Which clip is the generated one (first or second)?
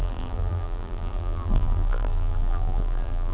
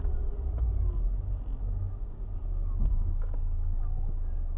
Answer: first